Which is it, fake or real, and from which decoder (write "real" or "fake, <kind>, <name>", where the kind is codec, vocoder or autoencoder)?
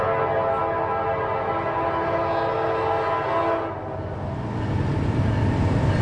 real